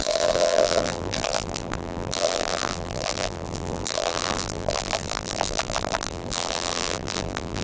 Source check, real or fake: fake